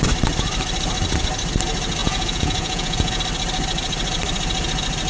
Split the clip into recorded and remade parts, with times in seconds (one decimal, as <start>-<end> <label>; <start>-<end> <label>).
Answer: 0.0-2.0 recorded; 2.0-3.2 remade; 3.2-5.1 recorded